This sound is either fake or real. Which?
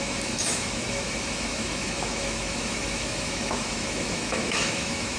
fake